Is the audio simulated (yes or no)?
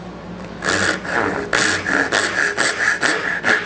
no